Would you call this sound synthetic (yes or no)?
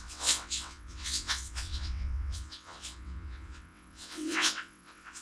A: yes